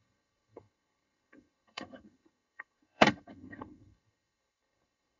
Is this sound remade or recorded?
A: remade